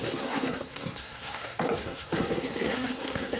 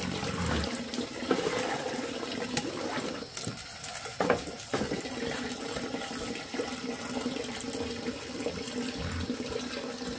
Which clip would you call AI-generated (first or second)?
first